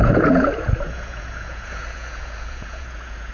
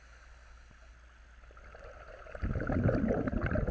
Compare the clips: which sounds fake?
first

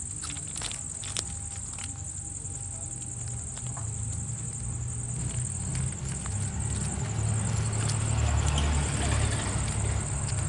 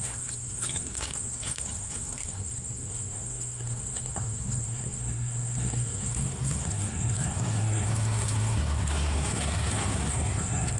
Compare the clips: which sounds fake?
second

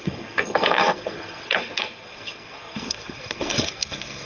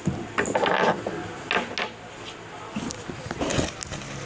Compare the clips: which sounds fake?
first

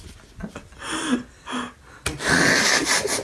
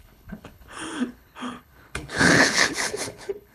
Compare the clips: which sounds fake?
second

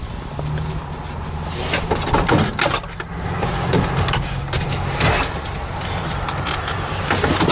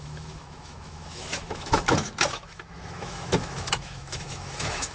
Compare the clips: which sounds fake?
second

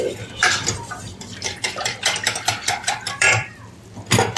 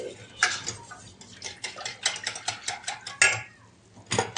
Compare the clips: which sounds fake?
first